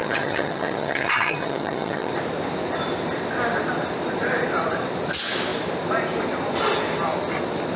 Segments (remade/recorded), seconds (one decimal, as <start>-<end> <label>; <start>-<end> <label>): 0.0-2.1 remade; 2.1-7.8 recorded

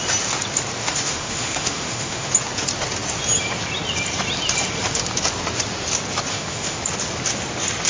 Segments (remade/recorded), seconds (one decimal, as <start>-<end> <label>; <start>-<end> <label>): 0.0-0.8 recorded; 0.8-2.3 remade; 2.3-6.3 recorded; 6.3-6.8 remade; 6.8-7.9 recorded

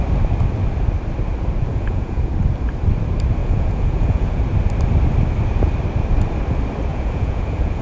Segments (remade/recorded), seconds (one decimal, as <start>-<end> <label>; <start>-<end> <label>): 0.0-1.7 recorded; 1.7-2.3 remade; 2.3-3.4 recorded; 3.4-4.4 remade; 4.4-6.9 recorded; 6.9-7.8 remade

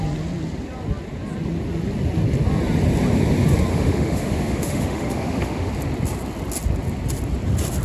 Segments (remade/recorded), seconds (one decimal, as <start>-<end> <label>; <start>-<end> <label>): 0.0-3.7 recorded; 3.7-5.7 remade; 5.7-7.8 recorded

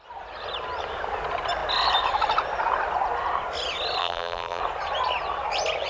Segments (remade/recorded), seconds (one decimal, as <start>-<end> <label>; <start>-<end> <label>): 0.0-4.0 recorded; 4.0-4.6 remade; 4.6-5.9 recorded

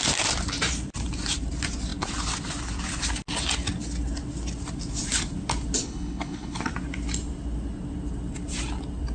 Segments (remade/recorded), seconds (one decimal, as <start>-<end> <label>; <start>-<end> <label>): 0.0-5.8 recorded; 5.8-6.7 remade; 6.7-9.1 recorded